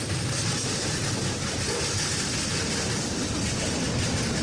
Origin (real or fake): real